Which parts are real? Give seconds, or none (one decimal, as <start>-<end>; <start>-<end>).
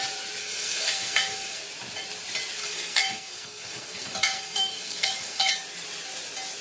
0.0-0.4; 1.6-2.6; 5.5-6.6